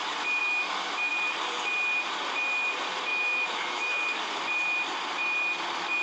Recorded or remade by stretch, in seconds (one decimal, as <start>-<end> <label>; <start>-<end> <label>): 0.0-0.4 recorded; 0.4-1.1 remade; 1.1-3.1 recorded; 3.1-3.9 remade; 3.9-6.0 recorded